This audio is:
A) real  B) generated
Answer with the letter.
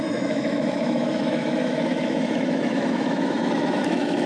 B